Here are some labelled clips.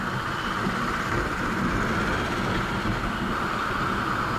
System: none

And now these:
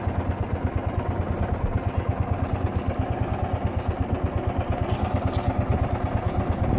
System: none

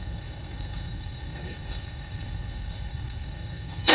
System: codec, SNAC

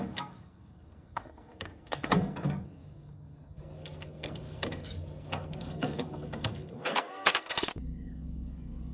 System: codec, SNAC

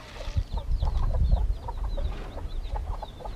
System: none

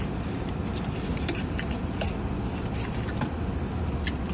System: none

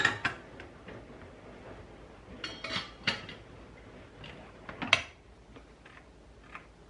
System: none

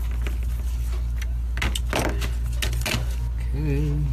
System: none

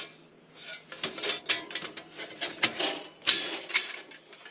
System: none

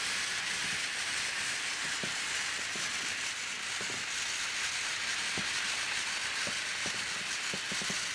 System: none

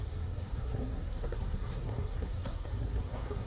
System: codec, SNAC